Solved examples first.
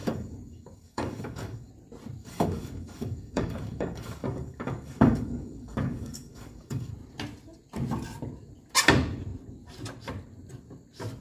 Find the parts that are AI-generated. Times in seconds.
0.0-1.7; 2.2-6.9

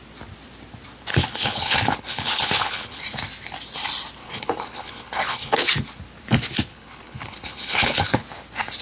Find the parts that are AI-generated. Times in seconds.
1.1-3.0; 4.2-5.7; 6.7-8.1

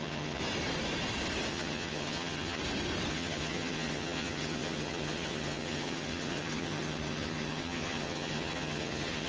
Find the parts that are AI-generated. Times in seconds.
0.0-0.4; 1.5-2.6; 3.1-9.3

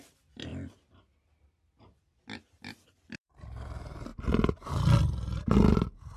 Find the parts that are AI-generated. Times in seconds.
none

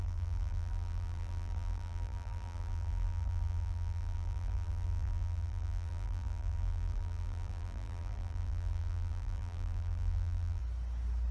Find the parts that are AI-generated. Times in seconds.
0.0-10.6